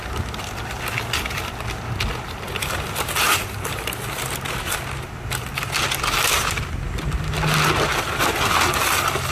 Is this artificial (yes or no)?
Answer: no